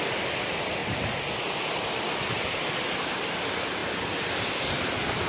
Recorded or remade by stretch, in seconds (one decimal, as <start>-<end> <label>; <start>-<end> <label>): 0.0-5.3 recorded